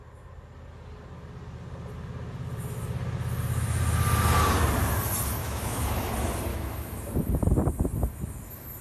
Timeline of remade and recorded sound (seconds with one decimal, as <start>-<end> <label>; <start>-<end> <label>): 0.0-5.4 recorded; 5.4-6.1 remade; 6.1-6.5 recorded; 6.5-7.1 remade; 7.1-8.8 recorded